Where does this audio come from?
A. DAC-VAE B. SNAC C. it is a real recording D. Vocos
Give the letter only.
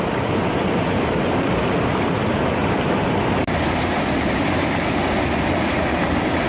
C